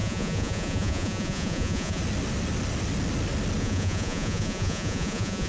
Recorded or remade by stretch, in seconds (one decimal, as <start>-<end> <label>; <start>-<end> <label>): 0.0-2.0 remade; 2.0-3.6 recorded; 3.6-5.5 remade